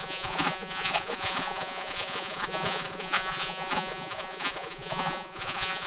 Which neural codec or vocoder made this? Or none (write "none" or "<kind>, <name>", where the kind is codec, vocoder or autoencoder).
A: vocoder, Vocos